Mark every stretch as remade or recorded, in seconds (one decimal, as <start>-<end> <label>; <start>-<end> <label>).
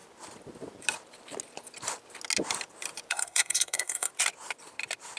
0.0-3.1 recorded; 3.1-4.1 remade; 4.1-5.2 recorded